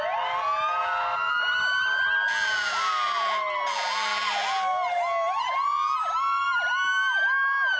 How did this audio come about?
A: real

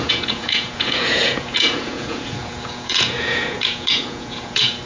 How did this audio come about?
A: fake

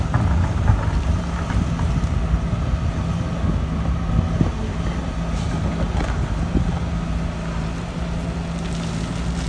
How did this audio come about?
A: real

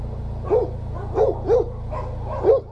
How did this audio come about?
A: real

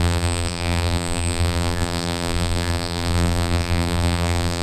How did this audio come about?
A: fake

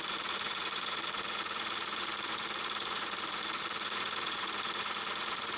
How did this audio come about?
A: fake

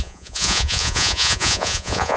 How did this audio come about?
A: fake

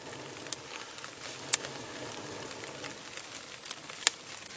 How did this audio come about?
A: real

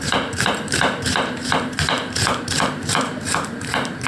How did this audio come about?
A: fake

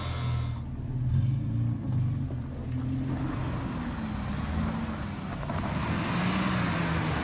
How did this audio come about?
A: real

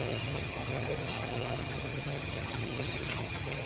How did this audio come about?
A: fake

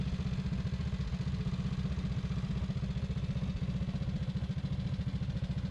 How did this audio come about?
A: real